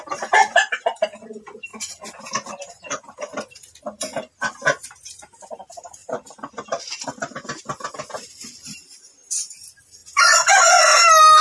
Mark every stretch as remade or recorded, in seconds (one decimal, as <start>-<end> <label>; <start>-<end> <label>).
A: 0.0-11.4 recorded